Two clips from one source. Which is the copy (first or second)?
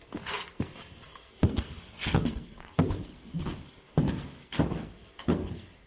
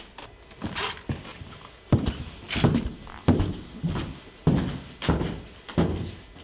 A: first